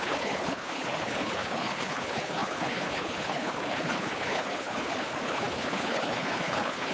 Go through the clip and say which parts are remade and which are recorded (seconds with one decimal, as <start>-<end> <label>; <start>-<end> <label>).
0.0-6.9 remade